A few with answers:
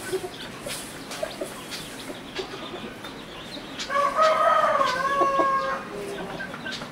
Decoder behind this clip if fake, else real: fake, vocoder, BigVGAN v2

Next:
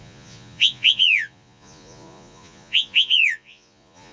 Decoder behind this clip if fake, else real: fake, vocoder, Vocos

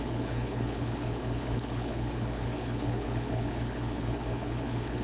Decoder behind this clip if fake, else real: fake, codec, HILCodec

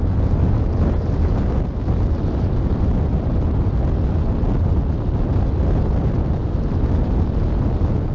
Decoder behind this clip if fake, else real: real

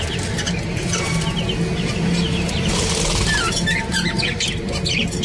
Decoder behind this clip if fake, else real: real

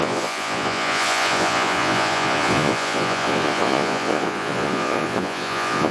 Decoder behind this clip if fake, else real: fake, vocoder, Vocos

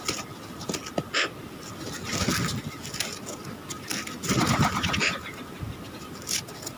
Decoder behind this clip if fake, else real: real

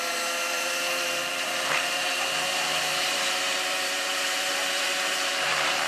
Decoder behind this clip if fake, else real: fake, vocoder, BigVGAN v2